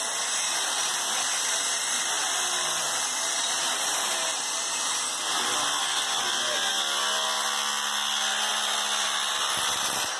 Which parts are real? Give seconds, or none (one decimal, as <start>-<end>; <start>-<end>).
0.0-10.2